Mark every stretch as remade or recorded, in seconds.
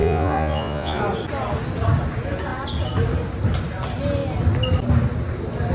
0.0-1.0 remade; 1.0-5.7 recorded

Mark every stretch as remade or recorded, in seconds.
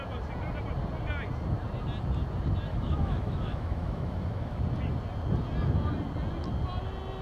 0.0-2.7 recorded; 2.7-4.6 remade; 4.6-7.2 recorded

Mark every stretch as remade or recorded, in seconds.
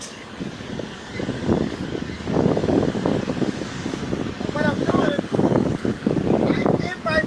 0.0-7.3 remade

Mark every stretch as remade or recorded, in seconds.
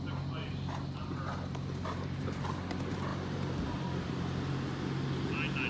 0.0-5.7 recorded